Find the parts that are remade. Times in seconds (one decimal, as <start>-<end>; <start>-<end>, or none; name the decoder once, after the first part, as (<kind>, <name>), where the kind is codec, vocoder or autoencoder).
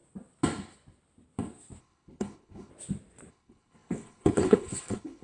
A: 1.8-2.7 (codec, HILCodec); 3.3-5.2